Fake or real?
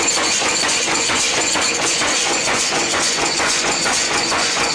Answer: fake